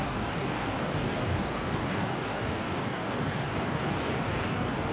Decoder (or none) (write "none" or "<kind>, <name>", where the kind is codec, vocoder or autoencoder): codec, DAC